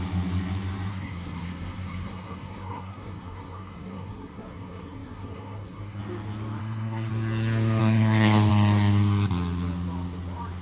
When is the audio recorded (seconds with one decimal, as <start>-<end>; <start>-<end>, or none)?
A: 0.0-0.9; 6.0-6.6; 7.1-7.8; 8.5-10.6